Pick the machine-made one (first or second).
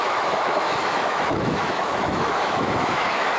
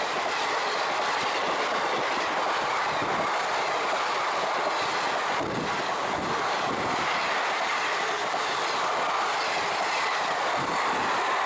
first